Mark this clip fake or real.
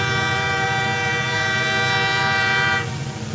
real